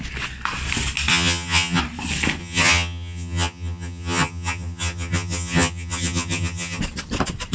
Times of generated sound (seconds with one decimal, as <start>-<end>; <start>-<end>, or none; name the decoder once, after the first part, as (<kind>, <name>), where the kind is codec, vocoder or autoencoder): 1.1-1.8 (vocoder, HiFi-GAN); 2.4-6.8